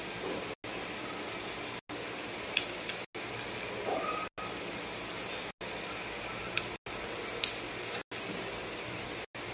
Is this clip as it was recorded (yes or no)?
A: yes